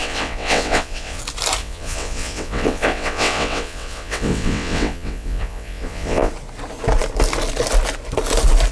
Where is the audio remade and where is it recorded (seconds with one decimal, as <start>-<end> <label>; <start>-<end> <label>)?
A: 0.0-1.2 remade; 1.2-1.6 recorded; 1.6-6.3 remade; 6.3-8.7 recorded